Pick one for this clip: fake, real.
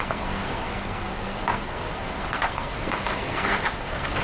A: fake